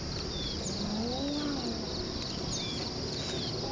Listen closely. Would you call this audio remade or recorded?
recorded